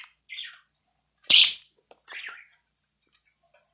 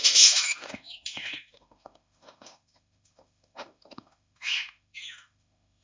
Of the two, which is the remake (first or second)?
second